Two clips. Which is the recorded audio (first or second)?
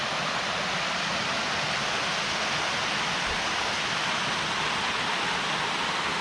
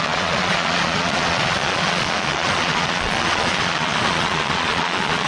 first